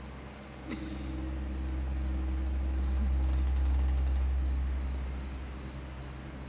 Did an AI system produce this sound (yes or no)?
no